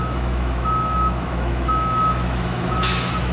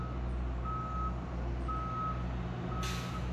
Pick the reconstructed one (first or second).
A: first